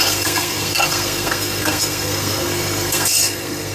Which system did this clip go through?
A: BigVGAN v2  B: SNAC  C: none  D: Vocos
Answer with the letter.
B